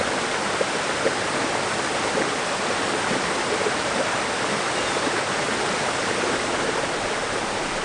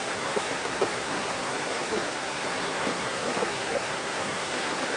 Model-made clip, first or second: second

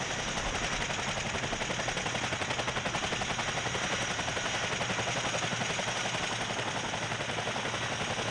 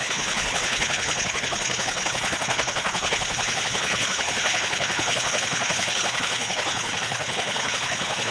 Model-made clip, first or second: second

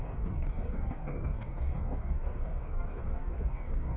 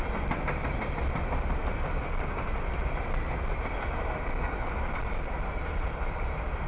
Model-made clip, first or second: first